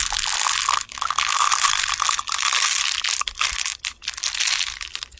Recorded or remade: recorded